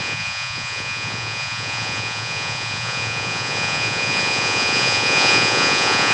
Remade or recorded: remade